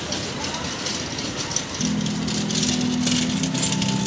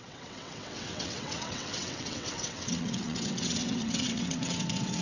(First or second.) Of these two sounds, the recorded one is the first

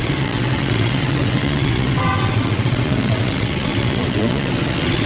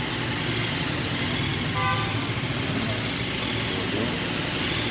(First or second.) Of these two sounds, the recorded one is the second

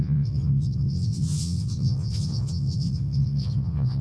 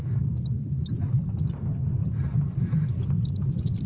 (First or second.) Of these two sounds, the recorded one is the second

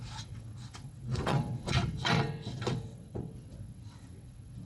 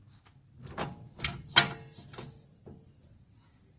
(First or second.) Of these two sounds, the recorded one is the second